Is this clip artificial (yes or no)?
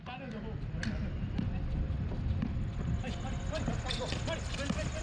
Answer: no